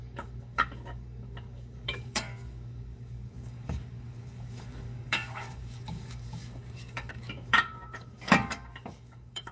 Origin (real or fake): fake